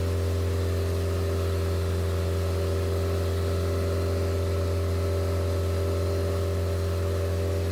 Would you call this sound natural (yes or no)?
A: yes